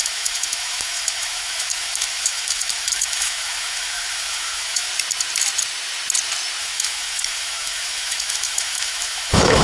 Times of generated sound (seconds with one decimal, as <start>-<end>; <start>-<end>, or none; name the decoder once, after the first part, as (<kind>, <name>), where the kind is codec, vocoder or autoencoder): 0.0-4.9 (autoencoder, DAC-VAE); 6.6-9.6